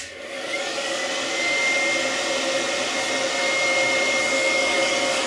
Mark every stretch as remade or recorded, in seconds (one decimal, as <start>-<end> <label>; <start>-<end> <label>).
0.0-1.0 remade; 1.0-4.2 recorded; 4.2-5.3 remade